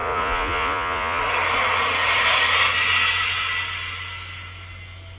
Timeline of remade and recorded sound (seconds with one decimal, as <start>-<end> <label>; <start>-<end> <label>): 0.0-1.2 remade; 1.2-5.2 recorded